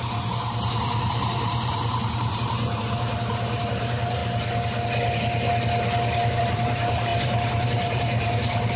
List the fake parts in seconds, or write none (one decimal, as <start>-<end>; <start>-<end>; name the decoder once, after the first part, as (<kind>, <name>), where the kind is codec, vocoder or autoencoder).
0.0-4.2 (vocoder, BigVGAN v2); 6.4-8.8